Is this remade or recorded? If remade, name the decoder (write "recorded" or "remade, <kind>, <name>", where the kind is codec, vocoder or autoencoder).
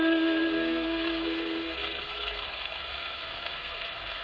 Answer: remade, codec, SNAC